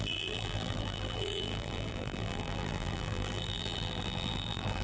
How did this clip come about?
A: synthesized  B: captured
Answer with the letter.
A